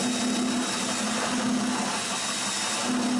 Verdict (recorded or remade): recorded